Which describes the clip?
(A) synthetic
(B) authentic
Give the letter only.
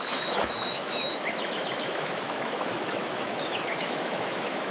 A